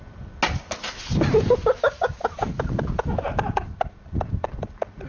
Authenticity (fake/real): real